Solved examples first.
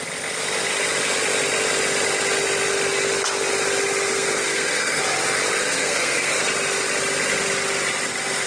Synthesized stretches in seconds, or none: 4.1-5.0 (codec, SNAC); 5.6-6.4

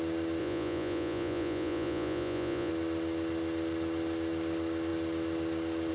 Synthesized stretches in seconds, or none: 0.4-2.7 (vocoder, Vocos)

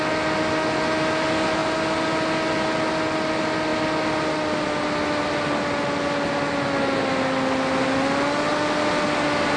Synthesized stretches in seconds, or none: none